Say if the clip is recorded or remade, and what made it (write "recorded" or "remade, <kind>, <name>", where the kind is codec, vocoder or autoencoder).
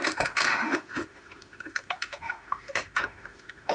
remade, autoencoder, DAC-VAE